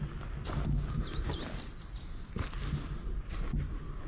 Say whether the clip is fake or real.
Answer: real